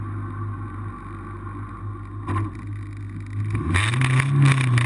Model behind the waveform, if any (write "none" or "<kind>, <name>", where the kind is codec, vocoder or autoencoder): none